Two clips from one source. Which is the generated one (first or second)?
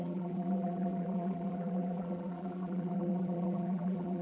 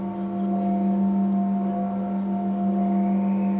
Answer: first